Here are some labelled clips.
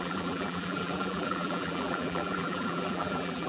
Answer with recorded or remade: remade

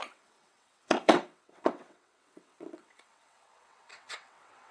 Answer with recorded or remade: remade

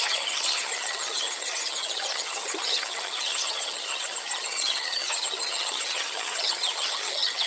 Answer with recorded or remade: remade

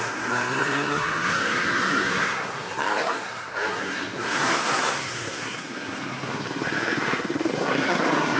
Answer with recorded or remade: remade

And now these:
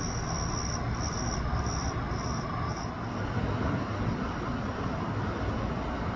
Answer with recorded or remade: recorded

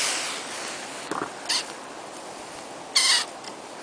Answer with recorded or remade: recorded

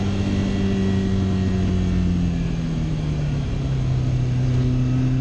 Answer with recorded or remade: recorded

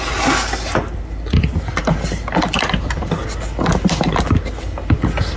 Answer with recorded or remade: recorded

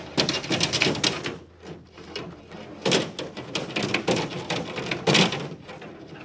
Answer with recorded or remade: recorded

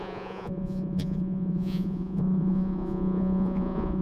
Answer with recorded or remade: remade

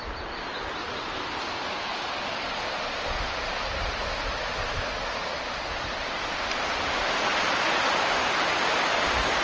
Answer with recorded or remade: recorded